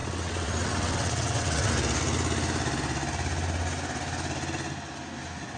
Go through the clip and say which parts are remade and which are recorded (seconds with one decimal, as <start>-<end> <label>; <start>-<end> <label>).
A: 0.0-1.7 remade; 1.7-5.6 recorded